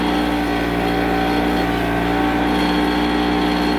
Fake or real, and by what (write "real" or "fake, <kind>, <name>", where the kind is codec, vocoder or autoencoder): real